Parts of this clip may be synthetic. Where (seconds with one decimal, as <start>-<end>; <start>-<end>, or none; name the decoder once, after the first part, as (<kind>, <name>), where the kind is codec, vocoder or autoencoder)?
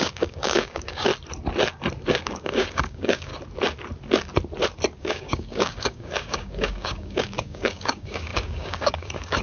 0.0-1.1 (codec, DAC); 2.1-3.3; 5.0-9.4